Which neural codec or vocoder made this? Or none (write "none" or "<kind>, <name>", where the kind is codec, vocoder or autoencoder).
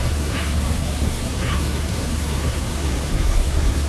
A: codec, SNAC